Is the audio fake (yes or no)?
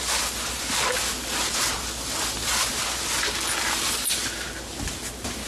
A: no